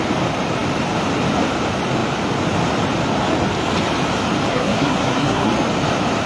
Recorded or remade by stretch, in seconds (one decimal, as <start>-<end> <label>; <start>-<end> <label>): 0.0-4.5 recorded; 4.5-5.5 remade; 5.5-6.3 recorded